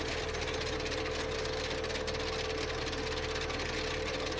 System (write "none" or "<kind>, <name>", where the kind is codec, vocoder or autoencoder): none